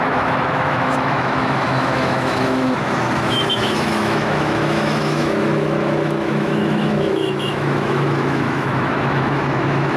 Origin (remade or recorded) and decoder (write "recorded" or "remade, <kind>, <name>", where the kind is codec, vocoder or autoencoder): remade, autoencoder, DAC-VAE